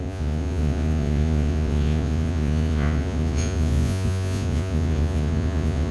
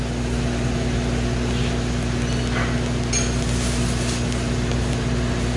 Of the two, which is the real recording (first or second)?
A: second